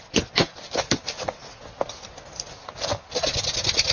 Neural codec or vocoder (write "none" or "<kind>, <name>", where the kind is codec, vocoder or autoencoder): none